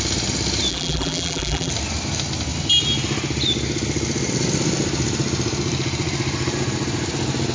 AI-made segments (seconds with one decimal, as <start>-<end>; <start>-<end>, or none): 0.7-1.7